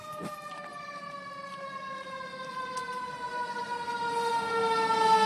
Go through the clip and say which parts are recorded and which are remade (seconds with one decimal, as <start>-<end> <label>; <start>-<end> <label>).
0.0-5.3 recorded